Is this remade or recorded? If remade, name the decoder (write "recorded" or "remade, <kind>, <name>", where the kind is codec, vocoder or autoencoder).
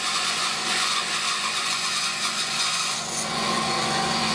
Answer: remade, vocoder, Vocos